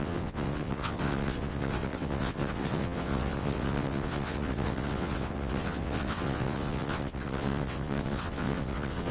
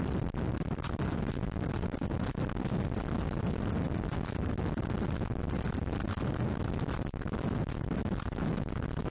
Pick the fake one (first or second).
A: first